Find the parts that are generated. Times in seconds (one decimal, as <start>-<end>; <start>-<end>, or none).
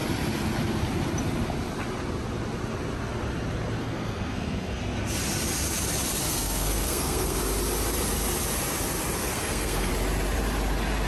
3.8-4.8; 6.2-7.4; 9.2-9.9